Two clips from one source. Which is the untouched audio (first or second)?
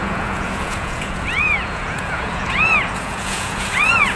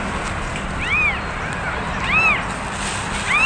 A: second